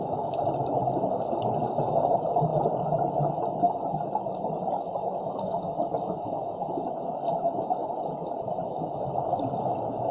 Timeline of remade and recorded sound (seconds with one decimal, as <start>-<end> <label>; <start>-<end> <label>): 0.0-2.5 recorded; 2.5-3.1 remade; 3.1-7.8 recorded; 7.8-8.4 remade; 8.4-10.1 recorded